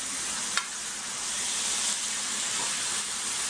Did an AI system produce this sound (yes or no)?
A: no